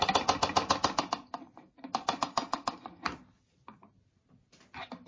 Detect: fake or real real